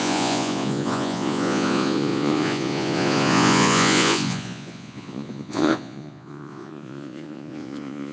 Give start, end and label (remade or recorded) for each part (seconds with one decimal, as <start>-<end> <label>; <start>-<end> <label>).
0.0-8.1 remade